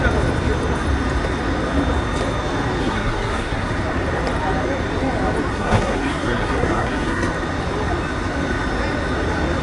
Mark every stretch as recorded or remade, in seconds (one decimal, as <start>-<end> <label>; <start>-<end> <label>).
0.0-2.8 recorded; 2.8-3.7 remade; 3.7-5.5 recorded; 5.5-7.3 remade; 7.3-9.6 recorded